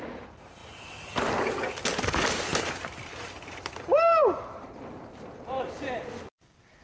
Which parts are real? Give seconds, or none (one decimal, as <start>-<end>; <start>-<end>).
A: 0.0-2.5; 5.6-6.8